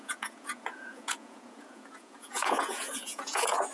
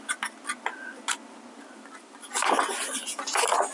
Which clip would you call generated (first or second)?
first